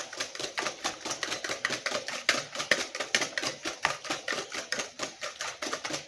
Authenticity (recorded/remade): recorded